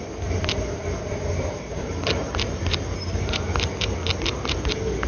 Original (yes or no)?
no